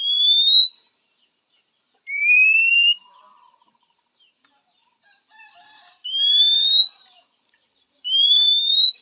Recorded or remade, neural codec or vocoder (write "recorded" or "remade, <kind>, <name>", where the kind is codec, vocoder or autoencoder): remade, vocoder, BigVGAN v2